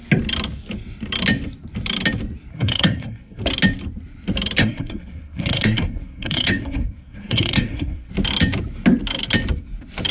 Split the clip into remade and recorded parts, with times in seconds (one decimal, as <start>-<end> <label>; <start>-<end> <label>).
0.0-2.5 recorded; 2.5-3.4 remade; 3.4-4.6 recorded; 4.6-8.1 remade; 8.1-10.1 recorded